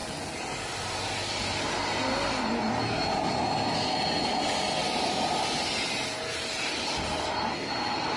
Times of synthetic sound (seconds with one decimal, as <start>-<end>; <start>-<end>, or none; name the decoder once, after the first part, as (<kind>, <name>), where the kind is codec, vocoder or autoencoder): 4.8-8.2 (vocoder, BigVGAN v2)